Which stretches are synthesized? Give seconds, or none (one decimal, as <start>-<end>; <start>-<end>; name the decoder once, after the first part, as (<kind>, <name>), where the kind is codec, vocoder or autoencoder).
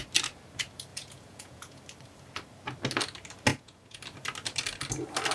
0.9-1.8 (vocoder, Vocos); 3.5-4.0